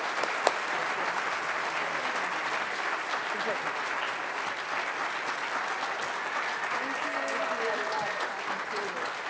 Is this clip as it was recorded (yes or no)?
yes